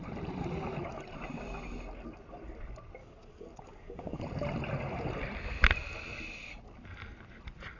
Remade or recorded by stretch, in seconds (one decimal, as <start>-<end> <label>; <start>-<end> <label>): 0.0-3.0 recorded; 3.0-4.2 remade; 4.2-7.8 recorded